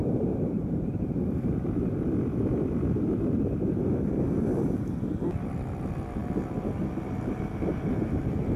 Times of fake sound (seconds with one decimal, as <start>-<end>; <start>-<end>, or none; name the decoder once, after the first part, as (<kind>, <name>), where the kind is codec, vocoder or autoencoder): 0.0-1.8 (vocoder, BigVGAN v2); 7.7-8.2